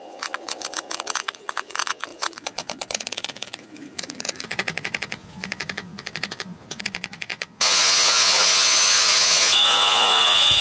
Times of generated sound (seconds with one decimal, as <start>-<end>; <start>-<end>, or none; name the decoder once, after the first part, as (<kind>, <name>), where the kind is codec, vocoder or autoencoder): 0.0-10.6 (vocoder, Vocos)